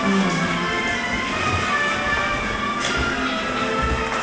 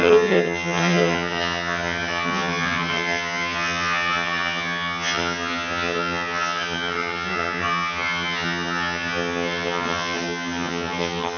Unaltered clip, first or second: first